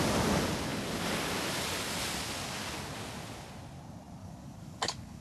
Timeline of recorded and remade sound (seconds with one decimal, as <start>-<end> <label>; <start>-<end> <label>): 0.0-4.2 recorded; 4.2-5.2 remade